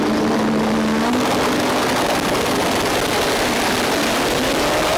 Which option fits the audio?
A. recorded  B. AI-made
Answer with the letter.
A